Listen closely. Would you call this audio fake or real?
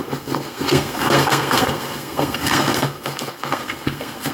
fake